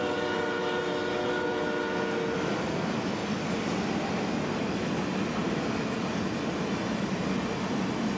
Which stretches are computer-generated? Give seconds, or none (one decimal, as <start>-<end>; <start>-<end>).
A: none